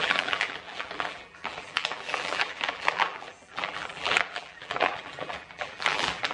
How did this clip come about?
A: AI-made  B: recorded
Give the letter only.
A